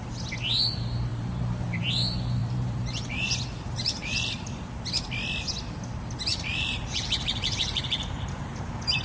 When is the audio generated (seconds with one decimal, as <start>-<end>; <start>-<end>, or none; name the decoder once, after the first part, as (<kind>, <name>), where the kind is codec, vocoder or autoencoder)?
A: 1.1-1.9 (vocoder, BigVGAN v2); 2.4-4.3; 6.3-9.0